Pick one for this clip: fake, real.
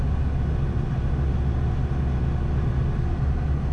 real